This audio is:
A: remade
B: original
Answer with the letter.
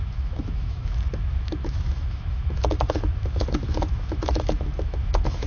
A